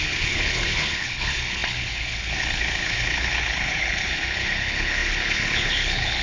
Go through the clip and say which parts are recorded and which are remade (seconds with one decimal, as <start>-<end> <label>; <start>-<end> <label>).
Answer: 0.0-6.2 remade